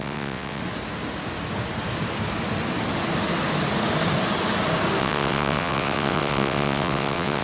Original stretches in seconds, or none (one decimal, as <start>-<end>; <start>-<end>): 0.6-5.0